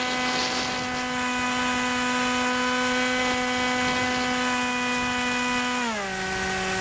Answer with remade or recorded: recorded